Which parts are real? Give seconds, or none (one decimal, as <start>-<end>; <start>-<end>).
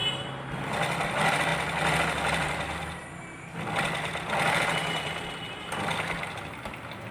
0.0-7.1